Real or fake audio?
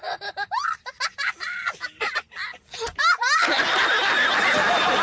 real